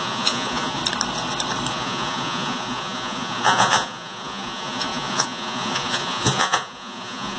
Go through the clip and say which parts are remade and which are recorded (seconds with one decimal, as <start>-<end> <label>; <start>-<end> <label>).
0.0-0.8 remade; 0.8-1.7 recorded; 1.7-7.4 remade